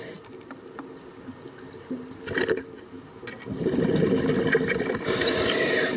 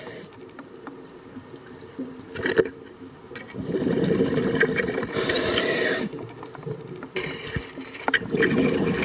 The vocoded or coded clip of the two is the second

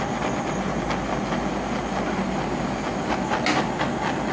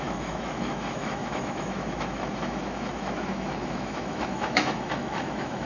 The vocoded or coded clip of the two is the second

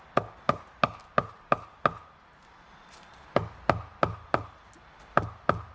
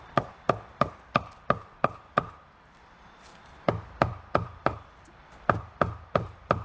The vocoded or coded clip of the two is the second